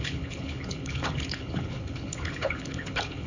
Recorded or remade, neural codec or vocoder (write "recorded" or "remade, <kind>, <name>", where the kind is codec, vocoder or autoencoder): remade, codec, HILCodec